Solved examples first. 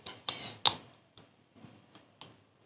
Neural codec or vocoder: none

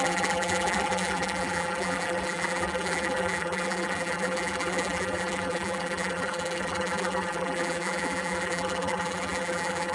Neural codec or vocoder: vocoder, BigVGAN v2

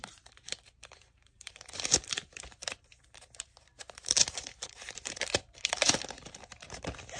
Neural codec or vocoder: vocoder, BigVGAN v2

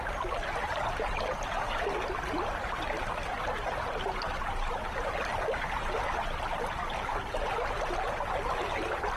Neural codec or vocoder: none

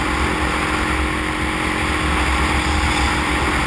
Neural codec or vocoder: none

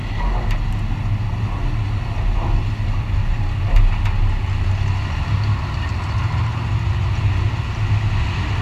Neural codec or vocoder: none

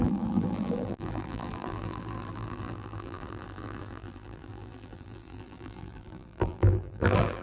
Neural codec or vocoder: vocoder, BigVGAN v2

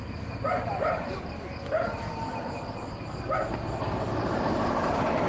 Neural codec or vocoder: none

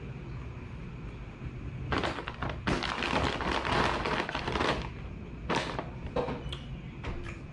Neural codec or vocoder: none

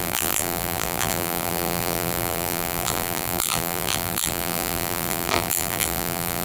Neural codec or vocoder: vocoder, BigVGAN v2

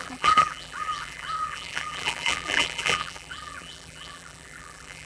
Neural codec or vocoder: vocoder, BigVGAN v2